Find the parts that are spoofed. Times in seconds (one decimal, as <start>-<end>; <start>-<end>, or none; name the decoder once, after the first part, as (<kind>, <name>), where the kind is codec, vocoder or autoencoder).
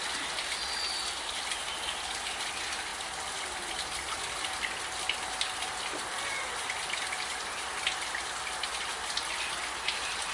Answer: none